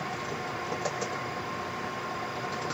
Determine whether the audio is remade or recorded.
remade